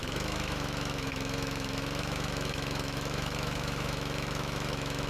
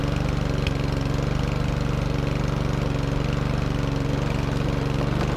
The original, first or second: second